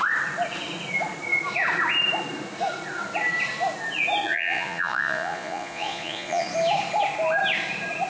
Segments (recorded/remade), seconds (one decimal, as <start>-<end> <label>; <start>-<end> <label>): 0.0-4.2 recorded; 4.2-6.5 remade; 6.5-8.1 recorded